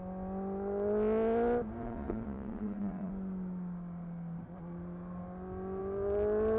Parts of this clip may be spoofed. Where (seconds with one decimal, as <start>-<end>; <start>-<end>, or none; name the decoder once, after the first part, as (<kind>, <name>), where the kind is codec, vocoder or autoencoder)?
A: 1.8-3.1 (vocoder, Vocos)